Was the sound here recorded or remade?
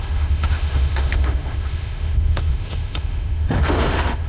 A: remade